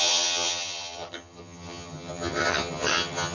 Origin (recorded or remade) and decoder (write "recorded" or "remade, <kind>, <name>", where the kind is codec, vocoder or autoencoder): remade, vocoder, HiFi-GAN